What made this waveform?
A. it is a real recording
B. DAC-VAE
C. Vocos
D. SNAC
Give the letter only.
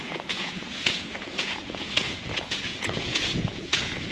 C